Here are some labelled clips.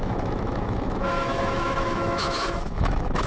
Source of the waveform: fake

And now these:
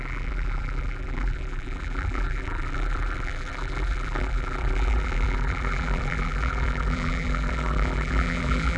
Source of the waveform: fake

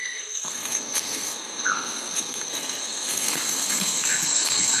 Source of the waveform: fake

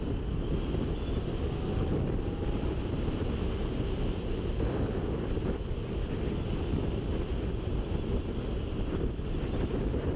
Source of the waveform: real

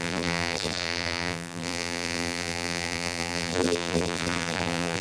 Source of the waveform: fake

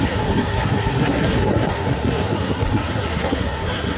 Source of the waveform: fake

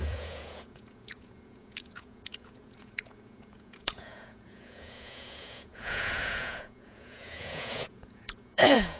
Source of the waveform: fake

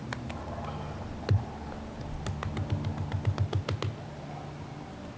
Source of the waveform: real